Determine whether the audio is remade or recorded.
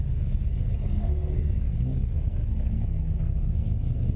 remade